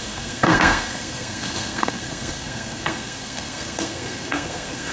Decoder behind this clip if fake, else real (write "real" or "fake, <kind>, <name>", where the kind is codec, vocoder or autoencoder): fake, codec, SNAC